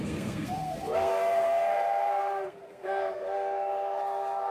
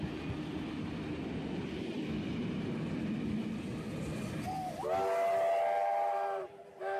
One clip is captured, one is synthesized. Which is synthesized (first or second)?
first